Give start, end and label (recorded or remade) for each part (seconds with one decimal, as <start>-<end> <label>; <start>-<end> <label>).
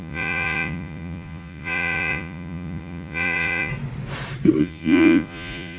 0.0-3.7 remade; 3.7-4.6 recorded; 4.6-5.8 remade